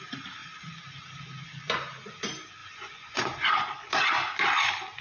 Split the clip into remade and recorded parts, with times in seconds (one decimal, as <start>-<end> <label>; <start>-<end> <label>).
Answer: 0.0-2.6 recorded; 2.6-3.5 remade; 3.5-5.0 recorded